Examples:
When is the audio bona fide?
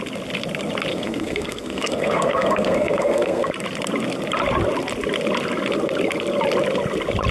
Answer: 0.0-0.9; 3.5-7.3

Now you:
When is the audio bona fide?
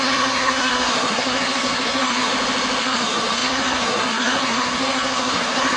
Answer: 2.3-2.8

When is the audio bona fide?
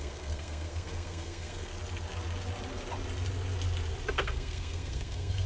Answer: 1.7-4.1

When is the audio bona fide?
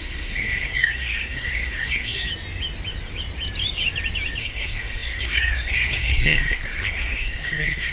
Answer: 2.3-4.4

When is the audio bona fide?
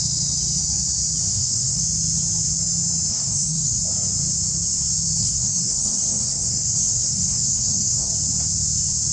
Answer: 0.0-1.3; 1.8-3.1; 3.8-5.2; 8.1-9.1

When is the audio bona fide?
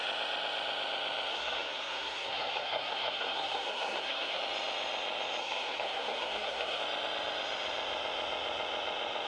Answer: 0.0-1.3; 4.4-5.4; 6.8-9.3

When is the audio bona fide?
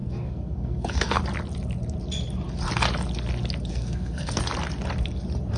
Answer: 1.2-3.7; 4.4-5.6